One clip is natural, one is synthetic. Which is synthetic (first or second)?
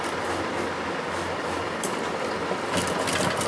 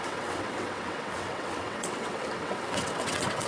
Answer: second